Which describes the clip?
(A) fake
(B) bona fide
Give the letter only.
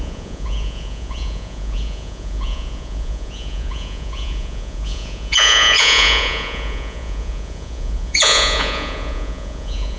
A